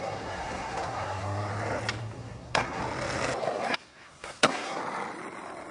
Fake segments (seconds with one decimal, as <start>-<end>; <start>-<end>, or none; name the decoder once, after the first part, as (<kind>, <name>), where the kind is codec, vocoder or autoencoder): 0.0-1.5 (codec, SNAC); 2.0-2.8; 3.4-4.8